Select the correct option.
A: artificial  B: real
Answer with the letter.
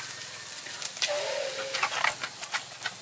B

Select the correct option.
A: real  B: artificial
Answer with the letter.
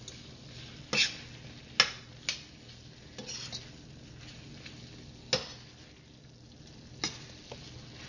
A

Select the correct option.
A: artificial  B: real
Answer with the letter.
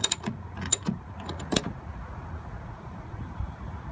A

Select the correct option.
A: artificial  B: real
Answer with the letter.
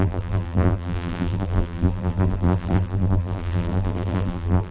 A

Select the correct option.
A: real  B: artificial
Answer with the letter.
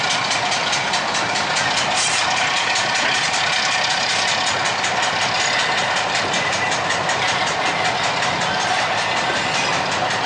A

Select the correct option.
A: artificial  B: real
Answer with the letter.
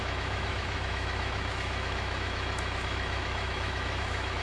A